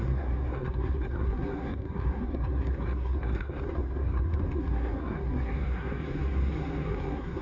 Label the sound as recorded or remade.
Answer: remade